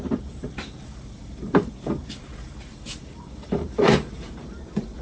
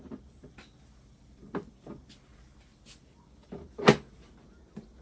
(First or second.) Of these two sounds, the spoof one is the first